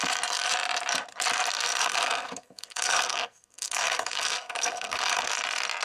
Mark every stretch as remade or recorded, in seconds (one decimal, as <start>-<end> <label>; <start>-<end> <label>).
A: 0.0-1.8 recorded; 1.8-5.3 remade; 5.3-5.8 recorded